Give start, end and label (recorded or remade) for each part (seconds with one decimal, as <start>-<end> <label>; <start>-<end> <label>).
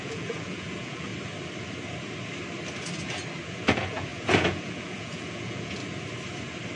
0.0-1.1 remade; 1.1-3.4 recorded; 3.4-5.8 remade; 5.8-6.8 recorded